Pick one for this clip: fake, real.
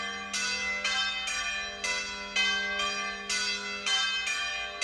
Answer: real